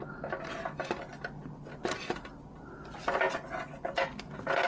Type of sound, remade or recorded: recorded